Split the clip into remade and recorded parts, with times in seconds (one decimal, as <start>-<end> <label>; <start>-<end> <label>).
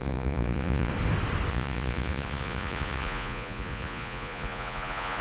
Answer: 0.0-0.9 remade; 0.9-1.5 recorded; 1.5-5.2 remade